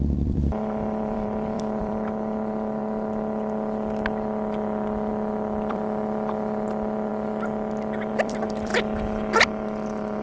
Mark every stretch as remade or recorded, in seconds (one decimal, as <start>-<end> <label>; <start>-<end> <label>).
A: 0.0-2.8 remade; 2.8-5.1 recorded; 5.1-7.1 remade; 7.1-8.1 recorded; 8.1-8.7 remade; 8.7-9.4 recorded; 9.4-10.2 remade